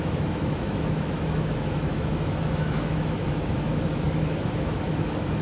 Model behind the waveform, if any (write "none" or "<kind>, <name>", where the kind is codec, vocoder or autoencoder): autoencoder, DAC-VAE